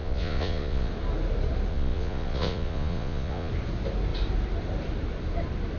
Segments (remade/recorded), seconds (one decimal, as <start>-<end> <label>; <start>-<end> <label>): 0.0-0.9 remade; 0.9-1.7 recorded; 1.7-3.5 remade; 3.5-5.8 recorded